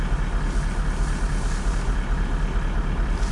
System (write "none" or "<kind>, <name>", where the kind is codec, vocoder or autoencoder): none